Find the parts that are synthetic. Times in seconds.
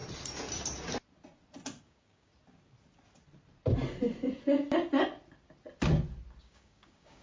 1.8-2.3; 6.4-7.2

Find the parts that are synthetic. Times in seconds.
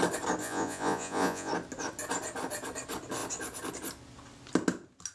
0.4-1.5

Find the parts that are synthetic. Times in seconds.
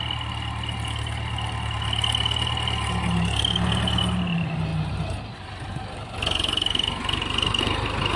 4.7-7.2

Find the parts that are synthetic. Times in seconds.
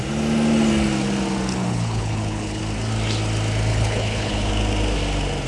1.5-2.6; 3.7-4.5